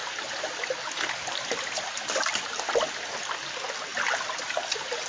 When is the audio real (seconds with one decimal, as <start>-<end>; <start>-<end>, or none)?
0.0-5.1